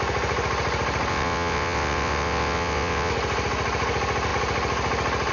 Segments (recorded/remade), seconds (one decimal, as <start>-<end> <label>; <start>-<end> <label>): 0.0-1.1 recorded; 1.1-3.1 remade; 3.1-5.3 recorded